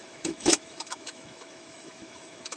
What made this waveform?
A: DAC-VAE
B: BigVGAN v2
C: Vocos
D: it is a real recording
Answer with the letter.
A